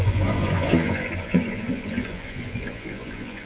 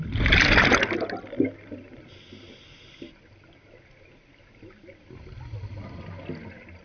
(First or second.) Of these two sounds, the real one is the second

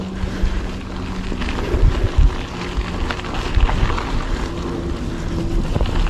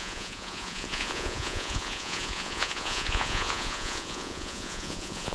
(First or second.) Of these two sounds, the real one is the first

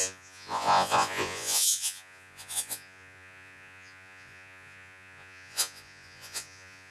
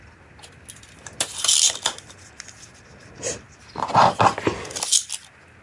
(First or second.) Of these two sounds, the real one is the second